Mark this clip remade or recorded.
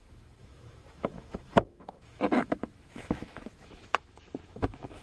remade